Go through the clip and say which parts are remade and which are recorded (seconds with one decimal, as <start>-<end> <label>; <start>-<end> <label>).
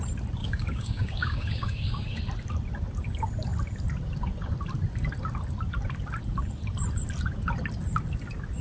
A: 0.0-0.4 recorded; 0.4-2.2 remade; 2.2-8.6 recorded